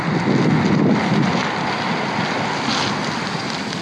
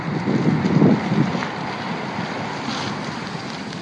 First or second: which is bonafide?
first